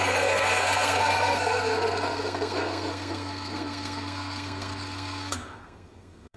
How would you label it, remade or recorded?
remade